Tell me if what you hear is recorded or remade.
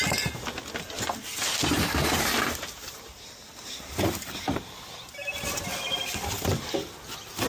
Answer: recorded